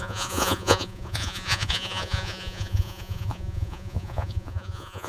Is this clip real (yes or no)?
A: no